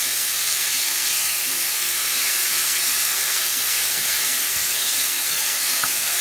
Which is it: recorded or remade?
remade